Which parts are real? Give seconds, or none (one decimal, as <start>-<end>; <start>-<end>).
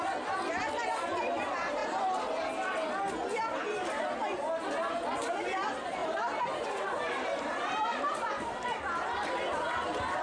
0.0-6.0; 8.3-10.2